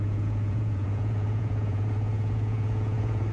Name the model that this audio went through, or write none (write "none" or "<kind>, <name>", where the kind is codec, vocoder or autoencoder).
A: vocoder, Vocos